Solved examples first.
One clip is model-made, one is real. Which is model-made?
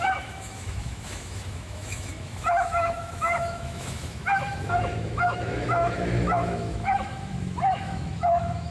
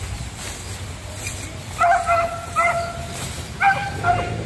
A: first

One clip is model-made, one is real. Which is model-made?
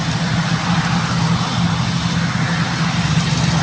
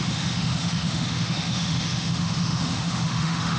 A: second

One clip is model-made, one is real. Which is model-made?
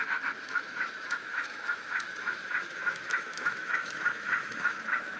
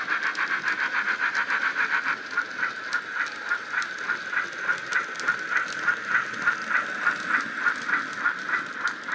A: first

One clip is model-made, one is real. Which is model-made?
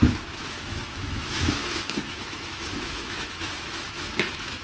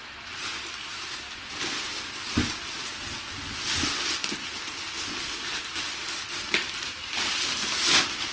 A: first